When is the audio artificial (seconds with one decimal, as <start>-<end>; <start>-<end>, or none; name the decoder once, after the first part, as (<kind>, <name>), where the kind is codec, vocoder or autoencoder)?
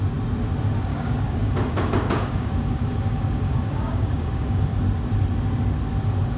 0.9-4.7 (codec, DAC)